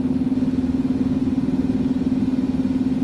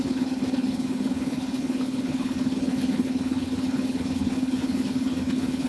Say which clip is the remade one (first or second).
second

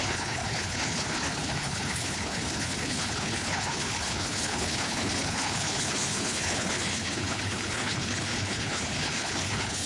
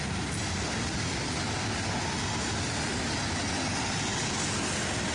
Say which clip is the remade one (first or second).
first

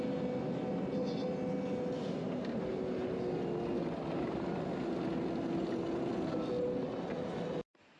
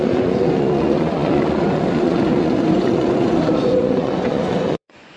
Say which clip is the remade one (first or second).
second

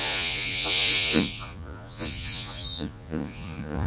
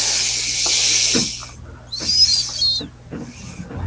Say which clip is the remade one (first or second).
first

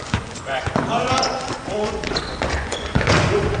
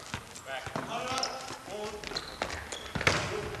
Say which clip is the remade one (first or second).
first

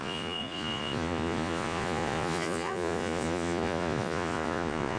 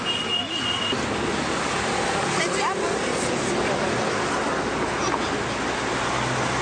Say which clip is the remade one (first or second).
first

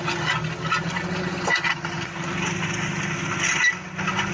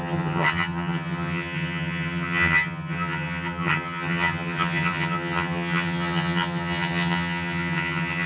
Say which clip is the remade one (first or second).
second